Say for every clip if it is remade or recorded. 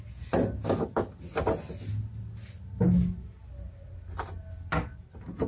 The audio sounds recorded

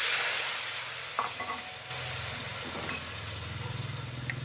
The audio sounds recorded